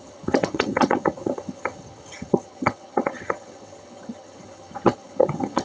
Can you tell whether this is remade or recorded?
remade